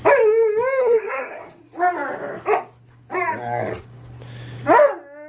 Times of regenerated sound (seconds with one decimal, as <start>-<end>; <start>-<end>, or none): 0.8-1.6